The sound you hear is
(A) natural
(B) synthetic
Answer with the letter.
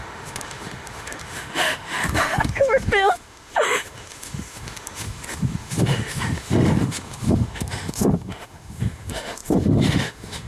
B